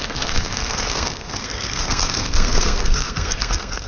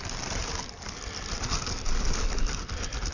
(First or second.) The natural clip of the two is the second